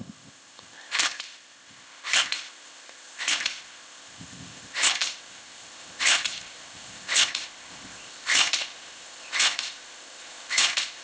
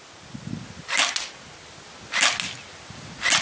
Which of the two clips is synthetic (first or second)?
first